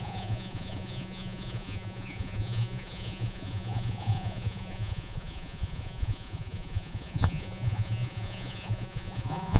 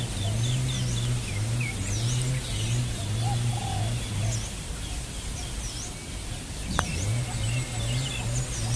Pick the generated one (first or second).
first